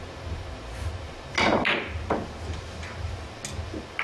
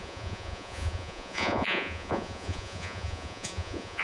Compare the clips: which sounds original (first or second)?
first